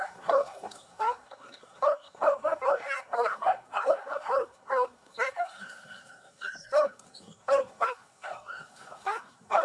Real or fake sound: fake